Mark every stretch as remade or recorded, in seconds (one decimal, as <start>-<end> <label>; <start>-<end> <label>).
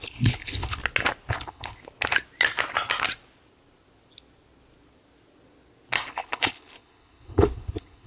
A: 0.0-0.8 remade; 0.8-1.3 recorded; 1.3-1.8 remade; 1.8-6.1 recorded; 6.1-8.1 remade